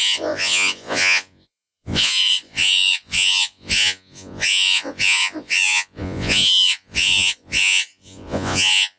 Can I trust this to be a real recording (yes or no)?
no